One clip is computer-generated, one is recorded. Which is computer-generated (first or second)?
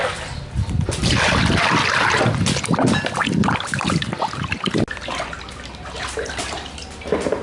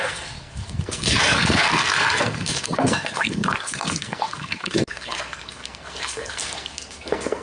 second